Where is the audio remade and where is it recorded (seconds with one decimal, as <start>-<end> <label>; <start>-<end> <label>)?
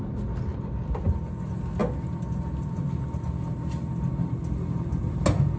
0.0-5.6 recorded